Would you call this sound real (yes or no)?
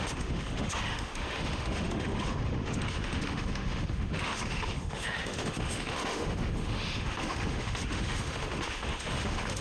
no